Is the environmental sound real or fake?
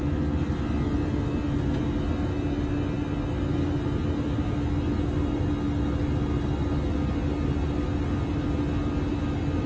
real